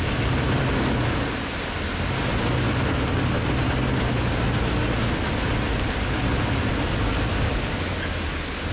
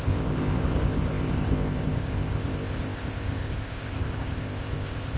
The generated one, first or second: second